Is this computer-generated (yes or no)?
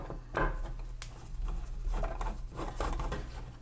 no